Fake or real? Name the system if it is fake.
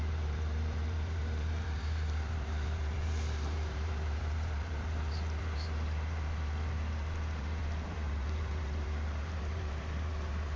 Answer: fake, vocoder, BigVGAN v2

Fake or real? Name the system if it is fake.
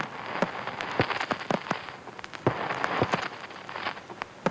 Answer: real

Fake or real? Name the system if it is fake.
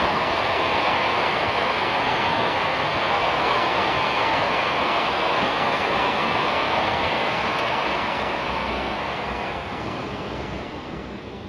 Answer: fake, codec, SNAC